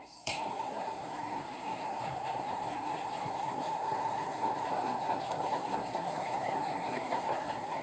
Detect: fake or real fake